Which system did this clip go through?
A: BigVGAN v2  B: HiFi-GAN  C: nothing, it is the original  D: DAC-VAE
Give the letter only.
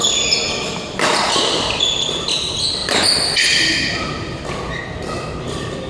C